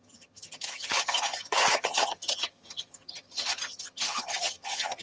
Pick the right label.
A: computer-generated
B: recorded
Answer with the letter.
A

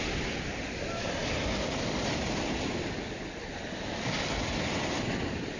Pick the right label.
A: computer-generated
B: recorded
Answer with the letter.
B